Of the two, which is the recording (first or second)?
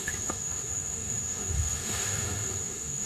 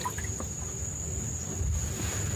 second